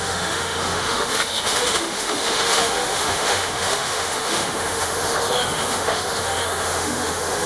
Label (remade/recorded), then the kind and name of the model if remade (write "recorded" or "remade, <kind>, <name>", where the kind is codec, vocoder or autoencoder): remade, autoencoder, DAC-VAE